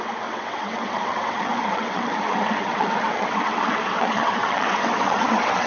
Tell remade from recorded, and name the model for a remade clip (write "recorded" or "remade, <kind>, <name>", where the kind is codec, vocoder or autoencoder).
remade, vocoder, WaveNeXt